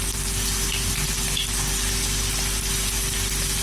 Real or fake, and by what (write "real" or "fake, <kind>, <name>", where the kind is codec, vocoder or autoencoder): real